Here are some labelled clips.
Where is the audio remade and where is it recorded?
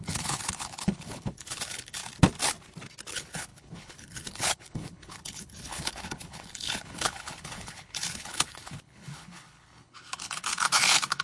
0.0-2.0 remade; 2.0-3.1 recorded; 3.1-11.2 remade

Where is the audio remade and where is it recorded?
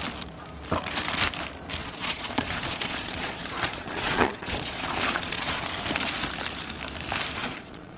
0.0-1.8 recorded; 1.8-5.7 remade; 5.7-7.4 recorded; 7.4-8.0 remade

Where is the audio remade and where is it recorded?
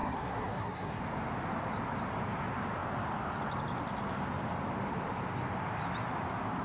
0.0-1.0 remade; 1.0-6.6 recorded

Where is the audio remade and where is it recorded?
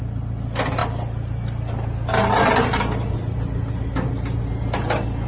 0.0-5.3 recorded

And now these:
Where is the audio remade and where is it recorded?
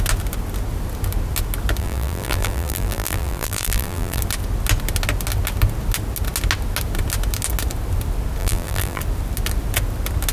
0.0-1.8 recorded; 1.8-4.2 remade; 4.2-8.4 recorded; 8.4-9.0 remade; 9.0-10.3 recorded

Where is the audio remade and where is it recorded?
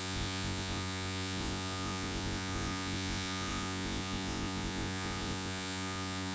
0.0-6.3 remade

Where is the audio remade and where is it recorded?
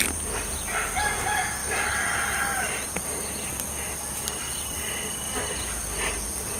0.0-6.6 recorded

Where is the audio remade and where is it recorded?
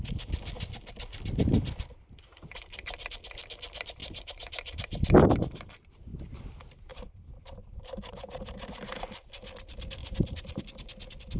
0.0-4.0 recorded; 4.0-5.9 remade; 5.9-6.9 recorded; 6.9-8.7 remade; 8.7-10.0 recorded; 10.0-10.6 remade; 10.6-11.4 recorded